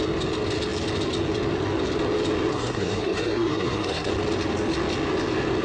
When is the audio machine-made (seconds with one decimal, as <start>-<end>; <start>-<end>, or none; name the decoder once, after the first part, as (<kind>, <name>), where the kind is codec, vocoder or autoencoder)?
2.5-4.1 (codec, SNAC)